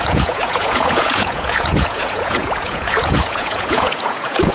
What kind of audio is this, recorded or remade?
remade